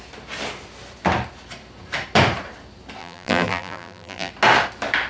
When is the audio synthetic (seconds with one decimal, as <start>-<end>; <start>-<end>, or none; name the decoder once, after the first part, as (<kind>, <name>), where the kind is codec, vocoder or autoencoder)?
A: 3.0-4.3 (vocoder, BigVGAN v2)

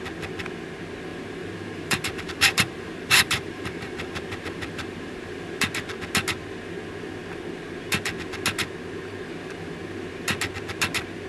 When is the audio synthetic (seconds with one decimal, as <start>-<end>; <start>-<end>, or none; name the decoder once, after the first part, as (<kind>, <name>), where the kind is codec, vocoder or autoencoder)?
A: 1.1-5.6 (vocoder, BigVGAN v2)

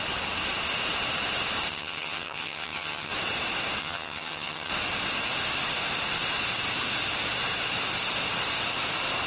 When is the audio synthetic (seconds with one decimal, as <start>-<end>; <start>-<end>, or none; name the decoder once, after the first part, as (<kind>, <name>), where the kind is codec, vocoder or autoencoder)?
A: 1.7-3.1 (vocoder, HiFi-GAN); 3.8-4.7